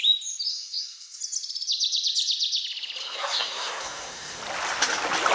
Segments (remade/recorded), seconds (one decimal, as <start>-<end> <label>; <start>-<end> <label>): 0.0-0.5 recorded; 0.5-1.2 remade; 1.2-3.0 recorded; 3.0-4.4 remade; 4.4-5.3 recorded